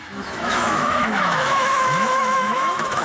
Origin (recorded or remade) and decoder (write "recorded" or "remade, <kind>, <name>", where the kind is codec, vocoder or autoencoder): remade, autoencoder, DAC-VAE